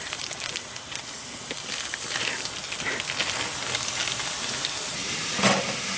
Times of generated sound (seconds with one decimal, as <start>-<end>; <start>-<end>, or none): none